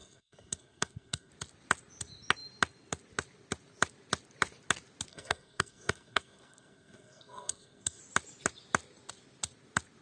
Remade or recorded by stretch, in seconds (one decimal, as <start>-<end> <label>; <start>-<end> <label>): 0.0-1.3 remade; 1.3-5.1 recorded; 5.1-8.0 remade; 8.0-10.0 recorded